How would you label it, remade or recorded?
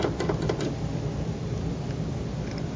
recorded